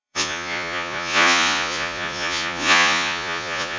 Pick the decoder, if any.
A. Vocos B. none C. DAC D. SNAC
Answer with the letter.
A